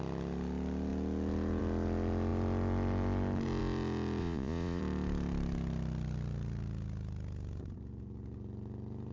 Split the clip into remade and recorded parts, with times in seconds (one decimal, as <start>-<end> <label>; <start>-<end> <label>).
0.0-4.2 recorded; 4.2-4.8 remade; 4.8-9.1 recorded